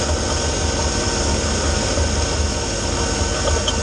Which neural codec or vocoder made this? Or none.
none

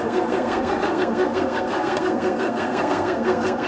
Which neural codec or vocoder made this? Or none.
codec, SNAC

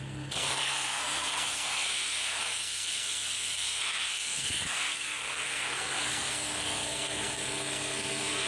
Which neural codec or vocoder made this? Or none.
codec, SNAC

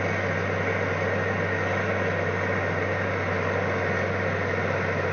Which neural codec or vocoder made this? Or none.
none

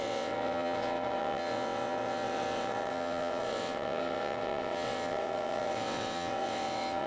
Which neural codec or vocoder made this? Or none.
vocoder, WaveNeXt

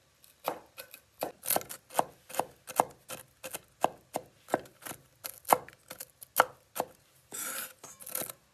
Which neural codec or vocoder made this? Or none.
none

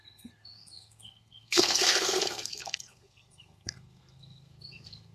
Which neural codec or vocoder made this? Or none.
codec, SNAC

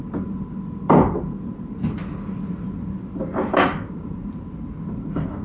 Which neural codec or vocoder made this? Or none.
none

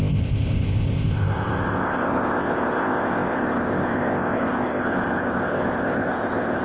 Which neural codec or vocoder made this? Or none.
codec, ZipCodec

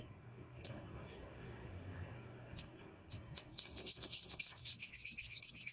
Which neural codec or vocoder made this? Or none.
codec, SNAC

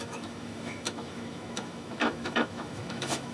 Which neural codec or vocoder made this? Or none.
autoencoder, DAC-VAE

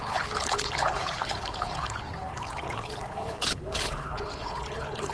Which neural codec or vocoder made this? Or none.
codec, HILCodec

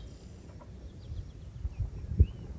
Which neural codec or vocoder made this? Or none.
none